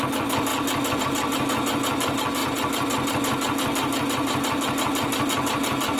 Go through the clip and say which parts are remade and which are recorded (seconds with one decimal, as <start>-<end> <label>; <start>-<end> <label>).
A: 0.0-6.0 recorded